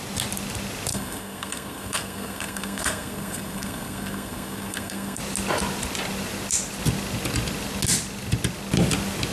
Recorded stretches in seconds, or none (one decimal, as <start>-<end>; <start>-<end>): 0.0-0.9; 5.2-9.3